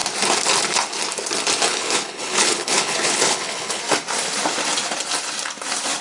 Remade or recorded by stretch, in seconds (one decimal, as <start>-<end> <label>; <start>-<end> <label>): 0.0-1.7 recorded; 1.7-3.8 remade; 3.8-6.0 recorded